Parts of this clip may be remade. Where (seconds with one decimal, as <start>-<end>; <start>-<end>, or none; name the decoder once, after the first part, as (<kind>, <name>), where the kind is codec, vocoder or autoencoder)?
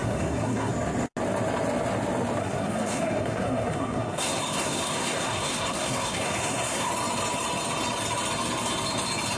0.0-0.7 (codec, SNAC); 2.4-6.9